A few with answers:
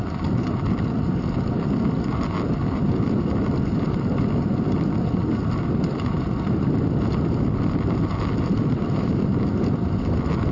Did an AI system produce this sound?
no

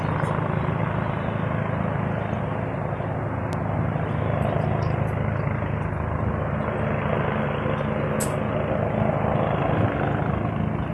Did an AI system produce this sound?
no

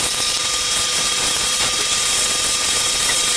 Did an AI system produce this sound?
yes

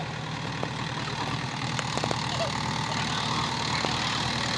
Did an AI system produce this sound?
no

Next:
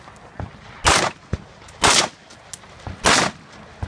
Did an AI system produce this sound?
no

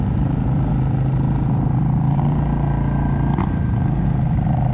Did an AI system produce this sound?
no